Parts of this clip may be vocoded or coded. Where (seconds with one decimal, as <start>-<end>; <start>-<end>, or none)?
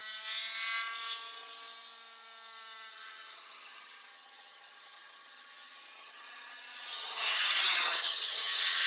2.9-8.9